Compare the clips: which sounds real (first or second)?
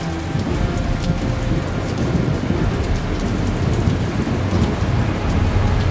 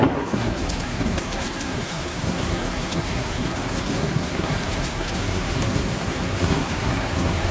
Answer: first